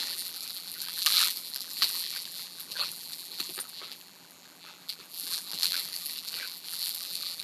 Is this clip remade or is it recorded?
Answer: remade